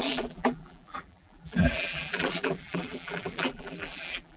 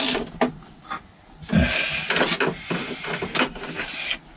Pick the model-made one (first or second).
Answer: first